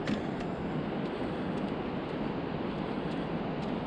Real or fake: real